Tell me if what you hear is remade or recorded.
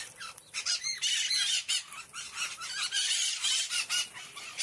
recorded